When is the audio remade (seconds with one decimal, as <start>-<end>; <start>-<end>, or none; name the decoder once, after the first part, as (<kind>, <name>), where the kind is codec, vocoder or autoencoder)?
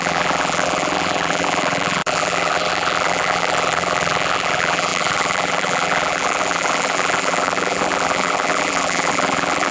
0.0-9.7 (vocoder, BigVGAN v2)